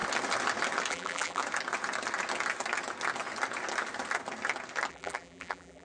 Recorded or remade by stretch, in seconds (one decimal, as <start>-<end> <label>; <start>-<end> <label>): 0.0-0.9 recorded; 0.9-1.4 remade; 1.4-4.9 recorded; 4.9-5.8 remade